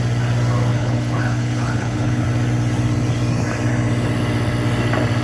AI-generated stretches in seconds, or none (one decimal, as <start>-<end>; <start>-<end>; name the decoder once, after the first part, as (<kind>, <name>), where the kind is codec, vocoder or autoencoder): 0.7-2.2 (codec, HILCodec)